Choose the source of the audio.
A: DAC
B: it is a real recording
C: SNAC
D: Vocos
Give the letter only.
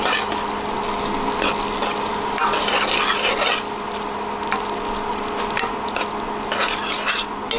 B